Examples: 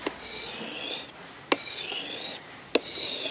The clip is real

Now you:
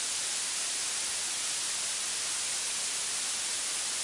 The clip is real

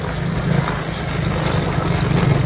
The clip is real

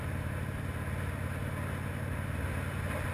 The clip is real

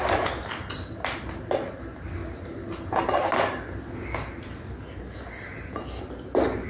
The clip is real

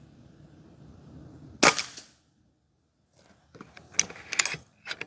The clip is real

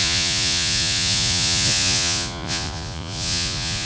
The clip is fake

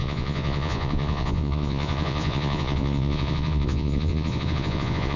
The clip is fake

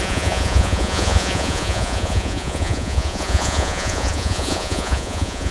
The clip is fake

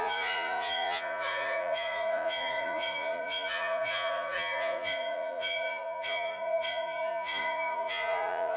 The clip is fake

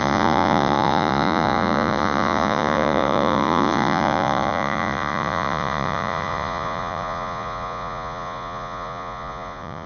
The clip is fake